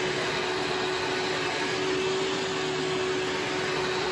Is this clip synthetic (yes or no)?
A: no